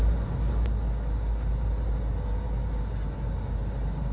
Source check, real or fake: real